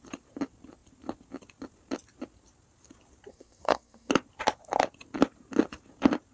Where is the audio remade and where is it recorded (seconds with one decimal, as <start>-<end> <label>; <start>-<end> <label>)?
0.0-3.3 recorded; 3.3-4.1 remade; 4.1-6.3 recorded